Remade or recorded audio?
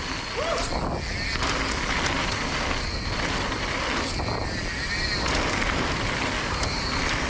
recorded